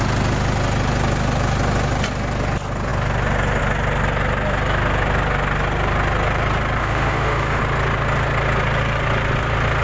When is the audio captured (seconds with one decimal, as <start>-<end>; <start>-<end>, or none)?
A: 0.0-6.8; 7.6-9.8